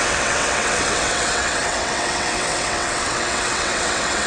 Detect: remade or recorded remade